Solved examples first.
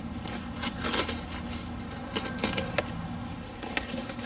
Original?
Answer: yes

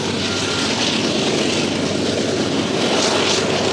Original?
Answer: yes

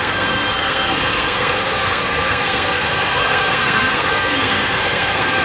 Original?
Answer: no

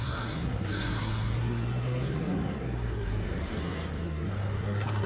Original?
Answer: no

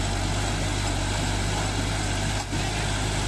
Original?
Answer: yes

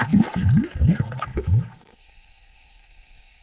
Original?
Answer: no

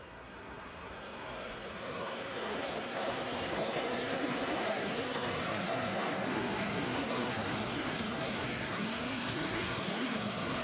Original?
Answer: no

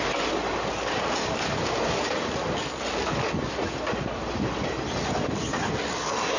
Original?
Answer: yes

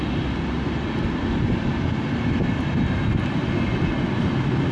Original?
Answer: yes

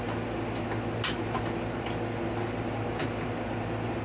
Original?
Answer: yes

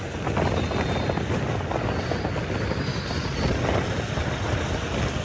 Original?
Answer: yes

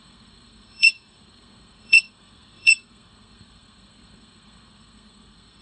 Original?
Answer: no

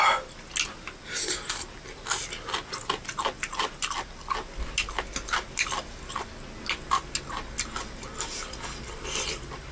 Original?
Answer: yes